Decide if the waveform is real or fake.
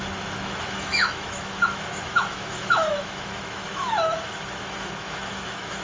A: fake